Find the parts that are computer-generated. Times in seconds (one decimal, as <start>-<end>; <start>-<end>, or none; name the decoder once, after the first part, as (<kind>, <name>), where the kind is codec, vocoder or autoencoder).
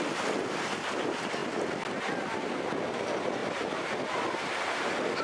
none